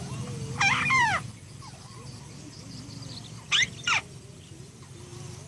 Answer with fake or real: real